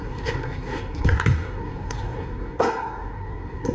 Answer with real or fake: fake